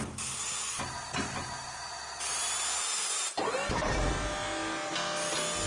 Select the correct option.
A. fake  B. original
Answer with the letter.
B